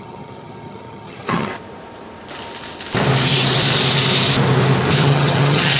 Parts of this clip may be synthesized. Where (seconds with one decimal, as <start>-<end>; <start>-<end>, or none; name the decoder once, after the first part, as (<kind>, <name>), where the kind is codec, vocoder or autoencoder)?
0.0-1.5 (vocoder, HiFi-GAN); 5.0-5.8